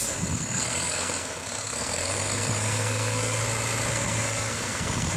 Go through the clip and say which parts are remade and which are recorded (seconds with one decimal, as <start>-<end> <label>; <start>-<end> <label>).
0.0-3.4 remade; 3.4-3.9 recorded; 3.9-5.2 remade